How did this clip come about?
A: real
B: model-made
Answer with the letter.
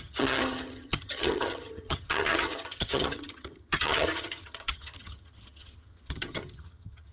B